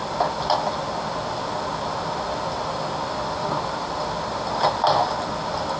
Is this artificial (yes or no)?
no